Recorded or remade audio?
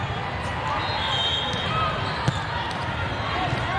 recorded